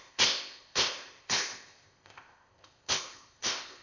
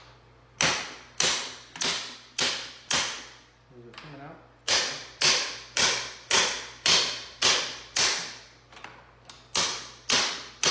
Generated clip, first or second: first